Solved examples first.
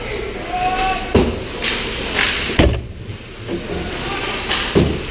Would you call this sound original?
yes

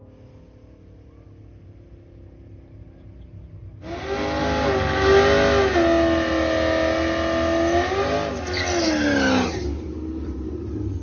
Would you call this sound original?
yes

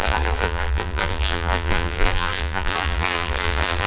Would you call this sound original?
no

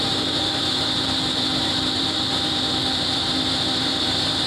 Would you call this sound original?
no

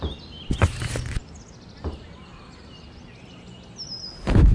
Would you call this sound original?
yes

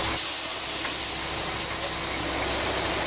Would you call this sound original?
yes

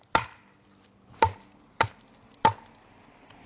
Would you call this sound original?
yes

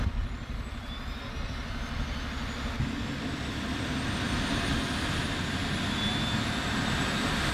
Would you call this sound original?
yes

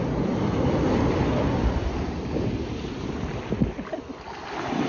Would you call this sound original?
yes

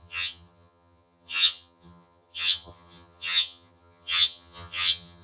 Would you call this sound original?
no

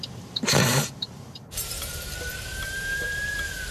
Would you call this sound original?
no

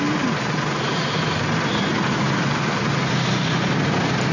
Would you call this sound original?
yes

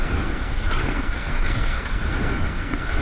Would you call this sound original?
no